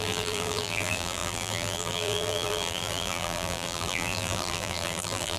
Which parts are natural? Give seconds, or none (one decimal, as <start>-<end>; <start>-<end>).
none